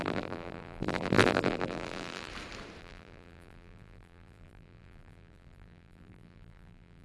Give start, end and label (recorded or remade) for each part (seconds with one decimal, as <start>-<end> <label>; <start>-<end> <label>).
0.0-2.3 remade; 2.3-2.8 recorded; 2.8-7.0 remade